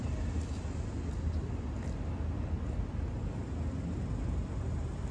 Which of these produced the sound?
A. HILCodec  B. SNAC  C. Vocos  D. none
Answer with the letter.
D